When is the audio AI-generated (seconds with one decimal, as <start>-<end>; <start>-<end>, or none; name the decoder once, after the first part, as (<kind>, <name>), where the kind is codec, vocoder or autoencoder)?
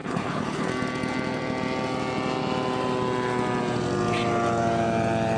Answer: 0.0-0.7 (codec, HILCodec)